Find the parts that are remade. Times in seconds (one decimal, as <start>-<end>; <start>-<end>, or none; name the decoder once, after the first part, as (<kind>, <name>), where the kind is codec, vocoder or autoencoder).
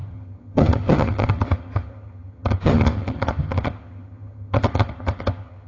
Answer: 0.0-5.7 (vocoder, HiFi-GAN)